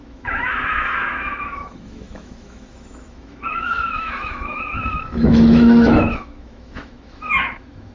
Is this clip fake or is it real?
fake